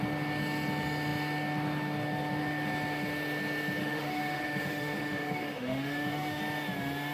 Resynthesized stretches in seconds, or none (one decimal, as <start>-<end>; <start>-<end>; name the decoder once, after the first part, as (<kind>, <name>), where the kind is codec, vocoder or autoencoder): 3.8-6.4 (autoencoder, DAC-VAE)